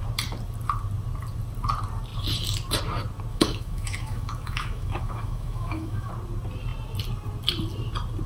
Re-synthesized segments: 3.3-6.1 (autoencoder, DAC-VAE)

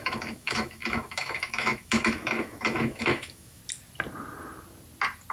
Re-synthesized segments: 0.0-3.6 (autoencoder, DAC-VAE)

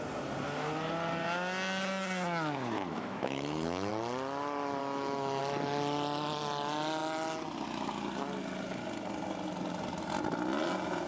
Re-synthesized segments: 2.9-3.9 (autoencoder, DAC-VAE); 4.8-5.4

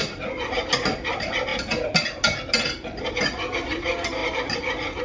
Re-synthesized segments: none